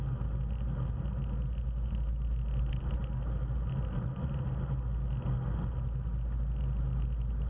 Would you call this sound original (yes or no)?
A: yes